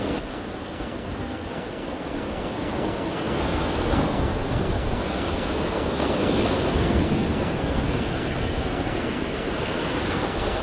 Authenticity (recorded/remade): remade